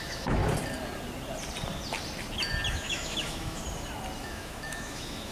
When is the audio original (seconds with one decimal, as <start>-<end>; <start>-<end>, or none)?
0.4-2.7; 3.6-4.2